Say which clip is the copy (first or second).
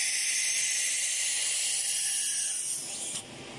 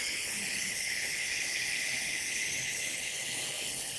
second